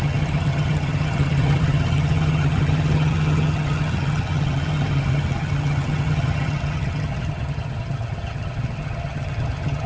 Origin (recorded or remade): remade